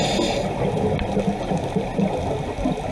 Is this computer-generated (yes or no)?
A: no